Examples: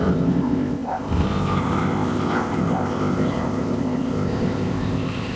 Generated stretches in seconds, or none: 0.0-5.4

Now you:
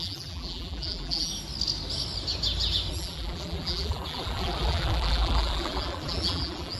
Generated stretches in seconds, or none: 0.0-1.3; 2.9-6.8

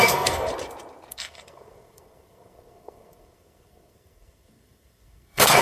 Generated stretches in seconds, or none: 0.0-0.5; 1.1-5.6

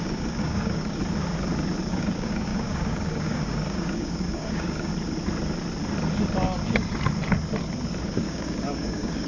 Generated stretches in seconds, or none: 0.0-1.0; 1.9-4.9; 8.0-9.3